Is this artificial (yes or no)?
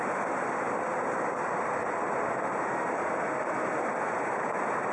no